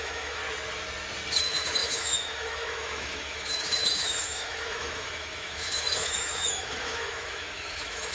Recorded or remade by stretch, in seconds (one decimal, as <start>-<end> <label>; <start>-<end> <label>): 0.0-0.4 remade; 0.4-1.4 recorded; 1.4-8.1 remade